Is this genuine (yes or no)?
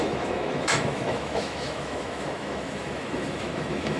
no